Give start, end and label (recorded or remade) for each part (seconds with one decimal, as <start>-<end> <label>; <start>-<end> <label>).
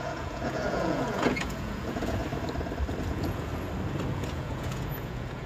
0.0-2.2 remade; 2.2-3.1 recorded; 3.1-3.5 remade; 3.5-4.1 recorded; 4.1-5.5 remade